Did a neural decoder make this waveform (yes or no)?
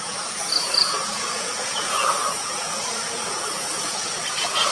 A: yes